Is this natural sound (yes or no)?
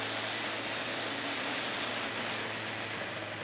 yes